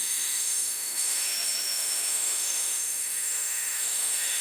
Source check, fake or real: fake